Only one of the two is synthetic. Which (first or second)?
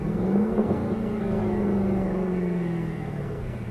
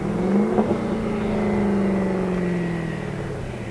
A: first